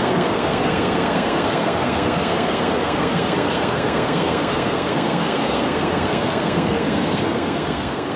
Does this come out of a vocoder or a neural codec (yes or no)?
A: yes